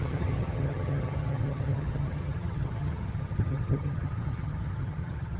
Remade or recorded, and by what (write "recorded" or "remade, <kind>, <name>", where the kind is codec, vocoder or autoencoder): remade, vocoder, HiFi-GAN